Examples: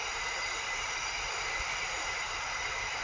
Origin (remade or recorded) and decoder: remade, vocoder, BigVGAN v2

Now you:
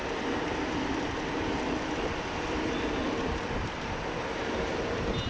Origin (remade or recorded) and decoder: remade, vocoder, BigVGAN v2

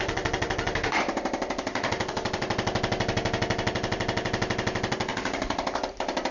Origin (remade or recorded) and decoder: remade, vocoder, BigVGAN v2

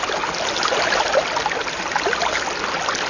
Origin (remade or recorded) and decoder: recorded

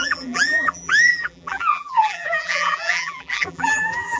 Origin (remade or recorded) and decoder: remade, vocoder, BigVGAN v2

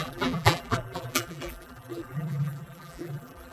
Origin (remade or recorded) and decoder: remade, vocoder, BigVGAN v2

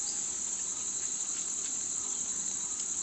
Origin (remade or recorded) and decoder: recorded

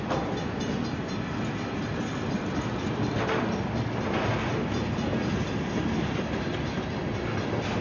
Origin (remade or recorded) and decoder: recorded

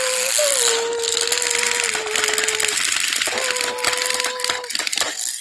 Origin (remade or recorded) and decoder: recorded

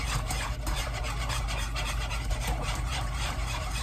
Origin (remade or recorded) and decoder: remade, vocoder, BigVGAN v2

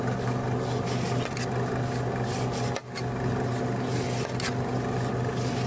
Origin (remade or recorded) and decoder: recorded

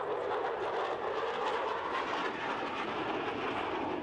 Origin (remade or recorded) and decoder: recorded